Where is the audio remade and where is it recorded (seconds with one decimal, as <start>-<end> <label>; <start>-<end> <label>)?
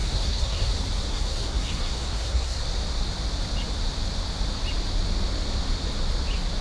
0.0-0.7 remade; 0.7-1.1 recorded; 1.1-2.6 remade; 2.6-6.6 recorded